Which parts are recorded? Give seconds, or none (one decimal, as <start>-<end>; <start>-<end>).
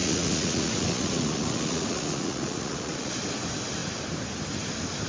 3.1-5.1